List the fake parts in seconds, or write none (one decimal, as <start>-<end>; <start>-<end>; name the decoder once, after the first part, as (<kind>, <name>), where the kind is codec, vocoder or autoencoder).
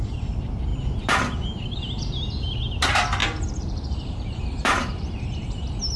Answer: 0.7-2.6 (vocoder, BigVGAN v2); 3.2-5.2